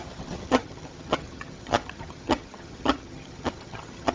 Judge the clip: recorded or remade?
remade